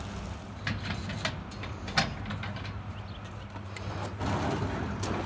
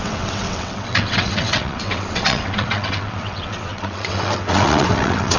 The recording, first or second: first